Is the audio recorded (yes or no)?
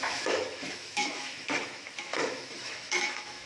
no